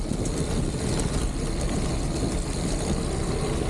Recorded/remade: recorded